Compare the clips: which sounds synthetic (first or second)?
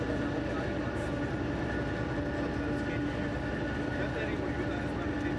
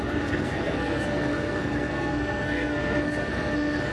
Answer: second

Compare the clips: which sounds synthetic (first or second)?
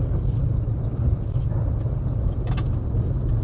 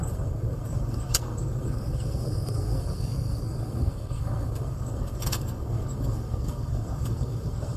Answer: second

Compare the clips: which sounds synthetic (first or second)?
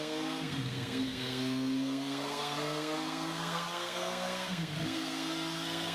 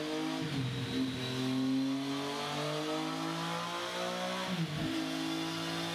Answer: first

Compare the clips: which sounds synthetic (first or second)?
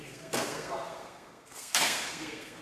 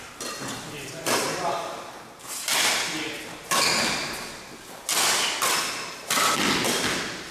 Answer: first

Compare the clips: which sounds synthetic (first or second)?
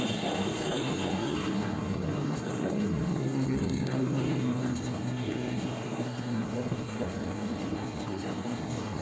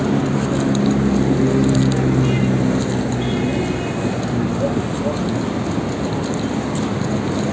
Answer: first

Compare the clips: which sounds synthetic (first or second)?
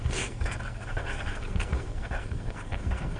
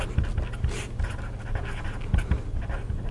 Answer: first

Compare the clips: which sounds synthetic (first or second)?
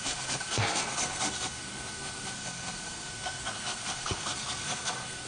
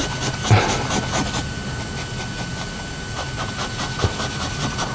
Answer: first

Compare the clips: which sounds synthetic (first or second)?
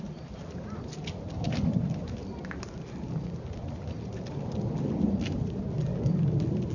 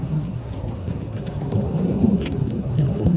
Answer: second